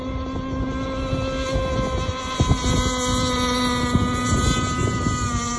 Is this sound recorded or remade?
recorded